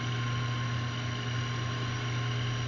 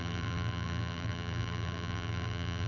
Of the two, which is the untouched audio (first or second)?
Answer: first